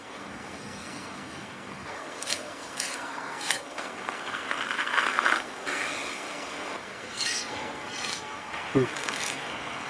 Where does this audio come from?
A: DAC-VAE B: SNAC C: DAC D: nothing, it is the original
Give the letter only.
B